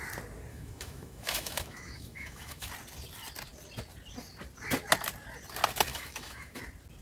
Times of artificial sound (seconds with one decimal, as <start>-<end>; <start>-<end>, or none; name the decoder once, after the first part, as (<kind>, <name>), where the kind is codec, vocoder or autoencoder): 0.5-2.7 (autoencoder, DAC-VAE); 5.9-6.6